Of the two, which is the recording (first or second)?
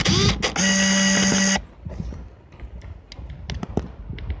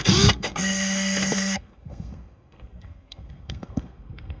first